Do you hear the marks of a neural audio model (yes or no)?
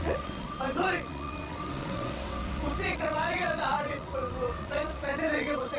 yes